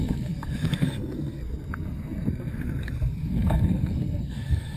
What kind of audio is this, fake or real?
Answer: fake